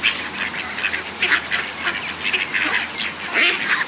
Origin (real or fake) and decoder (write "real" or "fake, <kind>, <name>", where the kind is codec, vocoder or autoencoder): real